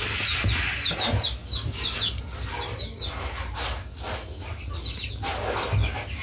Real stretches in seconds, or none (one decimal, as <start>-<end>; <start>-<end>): 0.0-6.2